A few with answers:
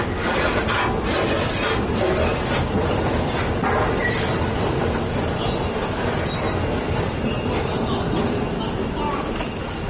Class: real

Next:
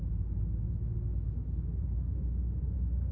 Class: real